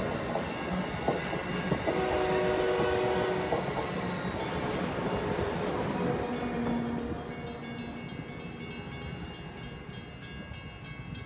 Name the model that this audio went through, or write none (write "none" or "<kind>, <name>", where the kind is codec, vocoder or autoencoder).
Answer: none